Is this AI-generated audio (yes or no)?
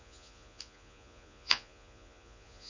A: yes